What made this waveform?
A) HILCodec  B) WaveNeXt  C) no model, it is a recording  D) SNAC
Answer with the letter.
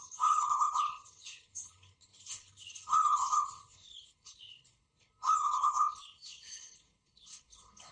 A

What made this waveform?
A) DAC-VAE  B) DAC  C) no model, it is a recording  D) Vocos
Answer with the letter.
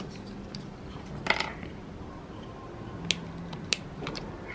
C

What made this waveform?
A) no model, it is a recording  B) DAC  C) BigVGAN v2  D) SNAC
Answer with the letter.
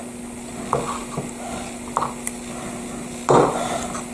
A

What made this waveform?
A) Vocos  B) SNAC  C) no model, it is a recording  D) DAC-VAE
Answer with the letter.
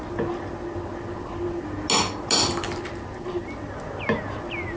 C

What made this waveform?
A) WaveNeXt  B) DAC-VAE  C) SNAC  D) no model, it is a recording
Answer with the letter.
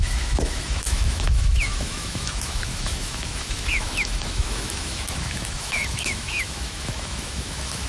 B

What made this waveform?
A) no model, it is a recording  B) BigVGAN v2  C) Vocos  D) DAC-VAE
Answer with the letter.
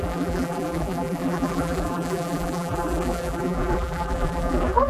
B